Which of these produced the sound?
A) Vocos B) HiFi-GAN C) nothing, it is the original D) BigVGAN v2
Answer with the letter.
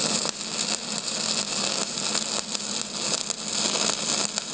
C